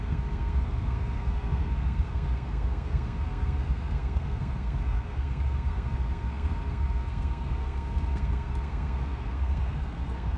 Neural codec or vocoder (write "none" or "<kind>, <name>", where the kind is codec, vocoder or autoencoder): codec, SNAC